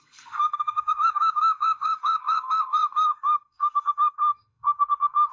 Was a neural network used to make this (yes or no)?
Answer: yes